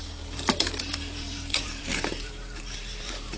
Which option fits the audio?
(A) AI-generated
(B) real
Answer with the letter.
A